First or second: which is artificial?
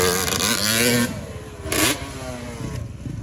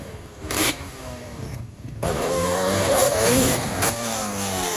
second